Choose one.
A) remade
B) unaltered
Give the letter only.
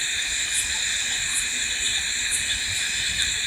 B